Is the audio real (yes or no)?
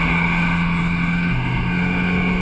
no